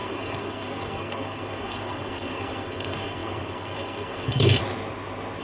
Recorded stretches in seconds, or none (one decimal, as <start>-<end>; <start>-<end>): 4.6-5.4